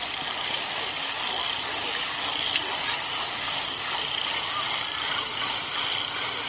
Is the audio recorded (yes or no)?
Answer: yes